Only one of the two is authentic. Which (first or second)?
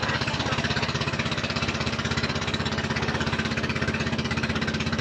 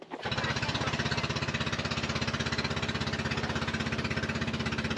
second